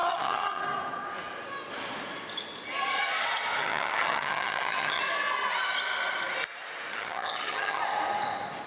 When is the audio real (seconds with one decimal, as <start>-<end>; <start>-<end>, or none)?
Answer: 0.6-3.6; 5.0-6.9; 7.8-8.7